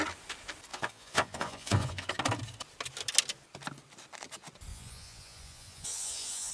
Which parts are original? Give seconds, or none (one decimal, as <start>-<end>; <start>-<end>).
0.0-0.7; 2.1-4.7